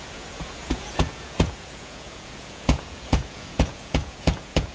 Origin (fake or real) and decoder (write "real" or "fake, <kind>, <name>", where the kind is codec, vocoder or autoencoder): fake, vocoder, Vocos